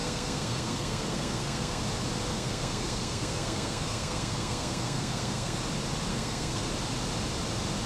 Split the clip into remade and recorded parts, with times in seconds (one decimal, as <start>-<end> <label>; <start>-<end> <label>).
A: 0.0-1.8 remade; 1.8-2.3 recorded; 2.3-5.6 remade; 5.6-6.1 recorded; 6.1-6.7 remade; 6.7-7.9 recorded